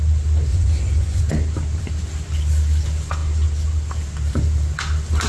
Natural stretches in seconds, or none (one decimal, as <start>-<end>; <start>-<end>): 0.0-0.5; 1.2-5.3